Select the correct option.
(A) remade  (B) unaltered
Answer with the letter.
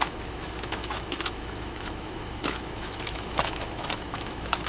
A